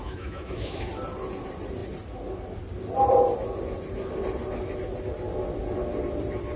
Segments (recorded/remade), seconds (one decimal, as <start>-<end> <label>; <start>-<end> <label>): 0.0-0.9 remade; 0.9-6.6 recorded